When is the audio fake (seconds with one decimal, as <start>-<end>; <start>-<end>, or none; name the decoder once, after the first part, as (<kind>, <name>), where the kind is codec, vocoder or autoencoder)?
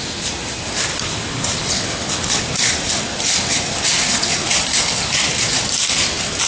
0.9-2.4 (codec, HILCodec)